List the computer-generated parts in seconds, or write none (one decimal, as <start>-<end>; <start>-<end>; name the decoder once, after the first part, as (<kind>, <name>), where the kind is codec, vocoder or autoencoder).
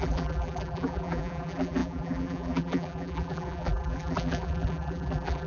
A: 0.0-5.5 (vocoder, BigVGAN v2)